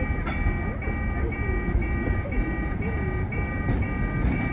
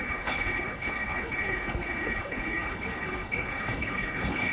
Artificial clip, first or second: second